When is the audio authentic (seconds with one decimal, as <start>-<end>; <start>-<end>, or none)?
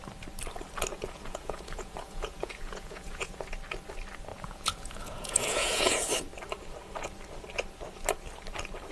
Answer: 0.0-0.9; 3.4-4.3; 6.1-8.9